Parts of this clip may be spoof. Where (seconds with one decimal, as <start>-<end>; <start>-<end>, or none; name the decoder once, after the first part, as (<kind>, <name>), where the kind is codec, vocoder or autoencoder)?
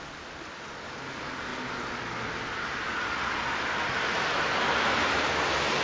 none